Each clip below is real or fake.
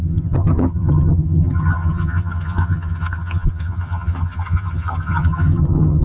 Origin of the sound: fake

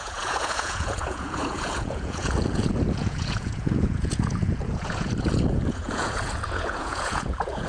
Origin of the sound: fake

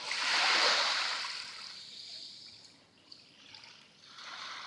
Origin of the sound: real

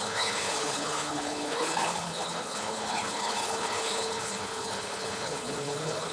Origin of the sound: fake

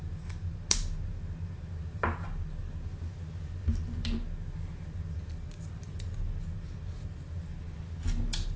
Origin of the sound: real